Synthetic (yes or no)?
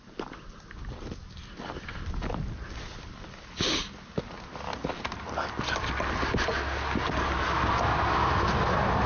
no